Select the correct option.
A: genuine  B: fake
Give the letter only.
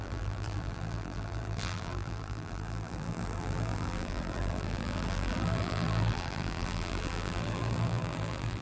B